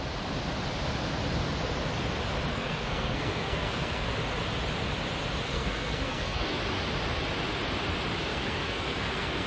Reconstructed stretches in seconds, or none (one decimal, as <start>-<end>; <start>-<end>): 2.5-4.1; 5.5-6.6; 8.2-9.5